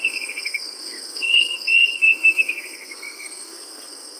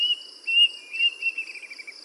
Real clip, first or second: second